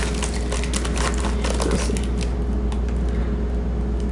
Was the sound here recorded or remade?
recorded